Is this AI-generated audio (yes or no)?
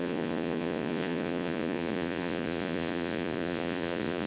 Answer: yes